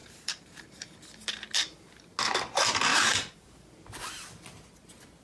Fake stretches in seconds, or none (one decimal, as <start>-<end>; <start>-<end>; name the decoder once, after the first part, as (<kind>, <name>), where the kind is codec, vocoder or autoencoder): 0.0-1.0 (vocoder, BigVGAN v2); 2.9-3.5